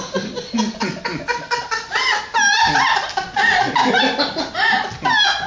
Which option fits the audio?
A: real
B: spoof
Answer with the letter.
A